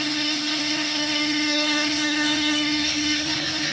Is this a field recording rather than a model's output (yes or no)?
no